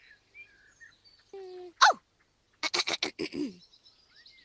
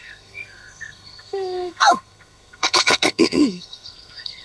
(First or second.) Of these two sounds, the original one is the first